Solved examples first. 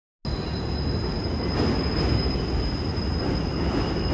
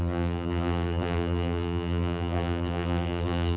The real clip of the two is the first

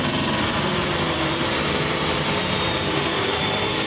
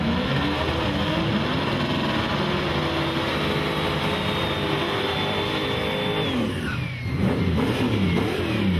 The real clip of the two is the second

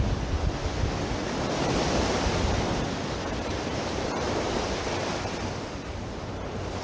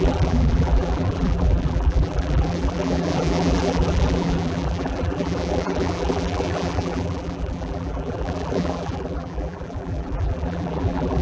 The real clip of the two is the first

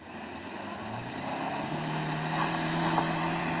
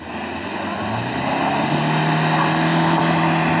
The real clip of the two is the second